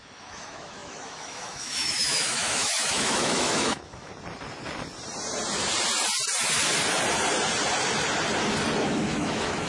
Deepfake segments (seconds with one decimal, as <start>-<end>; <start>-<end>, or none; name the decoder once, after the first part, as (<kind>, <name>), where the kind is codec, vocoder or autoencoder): 0.0-4.1 (autoencoder, DAC-VAE); 8.8-9.7